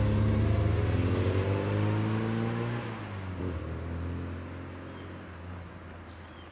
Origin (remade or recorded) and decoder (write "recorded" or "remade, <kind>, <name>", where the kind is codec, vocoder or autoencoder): recorded